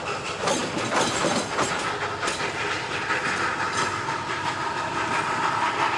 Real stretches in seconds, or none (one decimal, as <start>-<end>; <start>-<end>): 0.0-6.0